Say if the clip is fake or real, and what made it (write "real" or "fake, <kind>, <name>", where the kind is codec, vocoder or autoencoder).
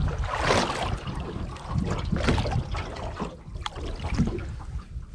real